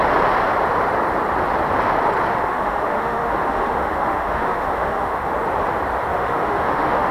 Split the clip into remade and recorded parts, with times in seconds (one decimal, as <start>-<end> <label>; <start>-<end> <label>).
0.0-2.3 recorded; 2.3-5.3 remade; 5.3-6.1 recorded; 6.1-7.1 remade